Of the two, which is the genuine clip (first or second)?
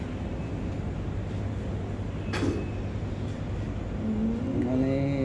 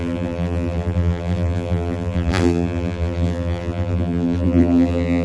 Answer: first